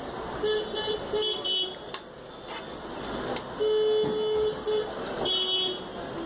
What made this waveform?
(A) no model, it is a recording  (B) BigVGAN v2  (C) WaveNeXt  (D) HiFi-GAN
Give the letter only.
A